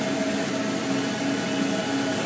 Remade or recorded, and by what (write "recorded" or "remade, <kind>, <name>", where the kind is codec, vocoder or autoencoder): recorded